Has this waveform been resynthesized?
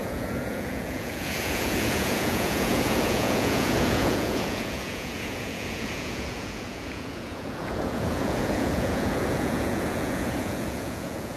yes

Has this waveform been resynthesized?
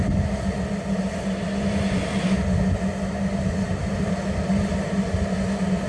no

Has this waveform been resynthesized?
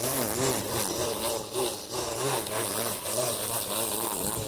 no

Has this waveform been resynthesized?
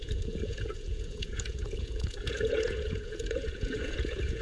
yes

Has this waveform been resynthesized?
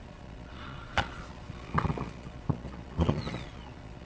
yes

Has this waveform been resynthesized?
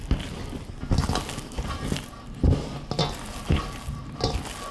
no